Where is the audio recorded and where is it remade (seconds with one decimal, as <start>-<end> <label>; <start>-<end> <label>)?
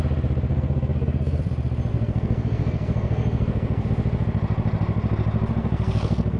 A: 0.0-0.5 recorded; 0.5-1.4 remade; 1.4-1.9 recorded; 1.9-3.9 remade; 3.9-5.6 recorded; 5.6-6.4 remade